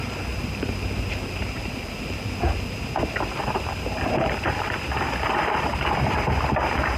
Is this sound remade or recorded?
remade